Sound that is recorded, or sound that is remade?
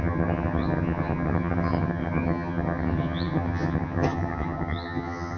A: remade